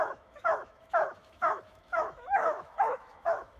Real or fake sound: fake